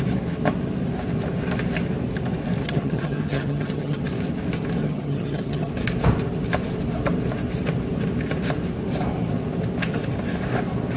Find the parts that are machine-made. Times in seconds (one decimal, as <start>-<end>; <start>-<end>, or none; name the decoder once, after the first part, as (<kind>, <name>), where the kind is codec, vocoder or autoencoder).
2.6-4.0 (vocoder, HiFi-GAN); 4.8-5.7